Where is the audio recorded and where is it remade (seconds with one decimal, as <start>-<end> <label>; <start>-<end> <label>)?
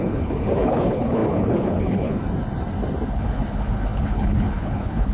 0.0-2.2 remade; 2.2-3.1 recorded; 3.1-5.1 remade